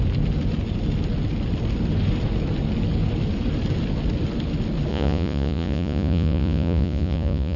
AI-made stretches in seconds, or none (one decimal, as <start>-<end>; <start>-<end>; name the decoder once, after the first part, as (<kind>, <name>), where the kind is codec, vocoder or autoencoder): 4.9-7.6 (vocoder, Vocos)

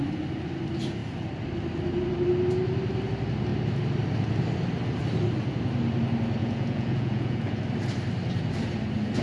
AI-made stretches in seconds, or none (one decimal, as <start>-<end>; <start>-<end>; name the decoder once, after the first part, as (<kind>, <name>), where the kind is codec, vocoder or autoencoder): 6.4-7.6 (vocoder, Vocos)

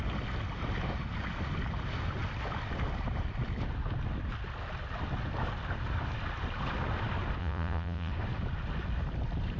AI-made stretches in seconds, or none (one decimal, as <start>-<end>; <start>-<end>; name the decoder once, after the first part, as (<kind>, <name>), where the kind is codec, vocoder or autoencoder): 7.4-8.1 (vocoder, Vocos)

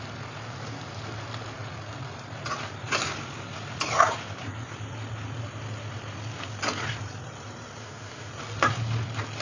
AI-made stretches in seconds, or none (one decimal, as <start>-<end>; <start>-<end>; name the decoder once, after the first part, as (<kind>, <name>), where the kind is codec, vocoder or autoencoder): 7.8-8.3 (autoencoder, DAC-VAE)

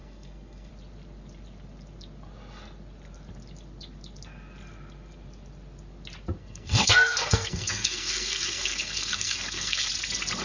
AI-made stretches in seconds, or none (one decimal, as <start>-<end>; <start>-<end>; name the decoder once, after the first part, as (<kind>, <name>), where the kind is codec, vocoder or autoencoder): 0.0-0.7 (codec, SNAC); 6.4-9.9

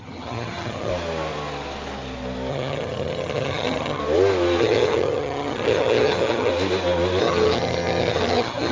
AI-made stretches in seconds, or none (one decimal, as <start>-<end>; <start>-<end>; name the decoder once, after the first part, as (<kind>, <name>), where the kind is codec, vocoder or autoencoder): 0.0-0.9 (vocoder, HiFi-GAN); 2.5-4.0; 4.6-6.5; 7.2-8.7